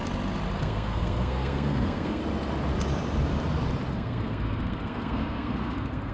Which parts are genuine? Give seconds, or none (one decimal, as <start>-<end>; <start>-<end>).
0.0-0.6; 2.2-3.9